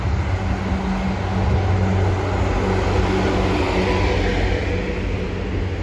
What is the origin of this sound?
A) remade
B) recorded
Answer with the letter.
B